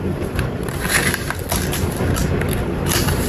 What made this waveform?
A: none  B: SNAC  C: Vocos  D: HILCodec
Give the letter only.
A